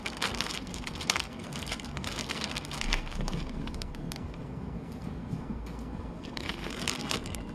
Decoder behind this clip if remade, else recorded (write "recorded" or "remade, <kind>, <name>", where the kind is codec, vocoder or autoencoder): remade, codec, SNAC